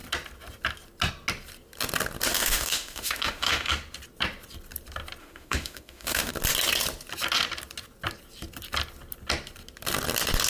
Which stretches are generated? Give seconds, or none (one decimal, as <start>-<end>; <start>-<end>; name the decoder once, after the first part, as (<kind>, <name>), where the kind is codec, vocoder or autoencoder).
2.3-3.7 (autoencoder, DAC-VAE); 5.2-6.3